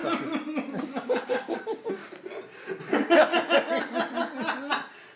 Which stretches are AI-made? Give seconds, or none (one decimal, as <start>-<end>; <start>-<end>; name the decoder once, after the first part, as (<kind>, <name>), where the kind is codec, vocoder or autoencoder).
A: 0.8-2.0 (codec, DAC); 2.9-3.3